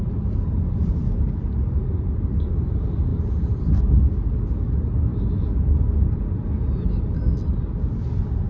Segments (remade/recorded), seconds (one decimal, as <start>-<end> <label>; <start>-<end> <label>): 0.0-8.5 recorded